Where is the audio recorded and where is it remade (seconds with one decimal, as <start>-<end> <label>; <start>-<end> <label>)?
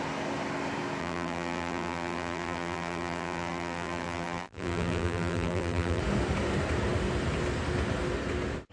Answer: 0.0-1.0 recorded; 1.0-6.0 remade; 6.0-8.7 recorded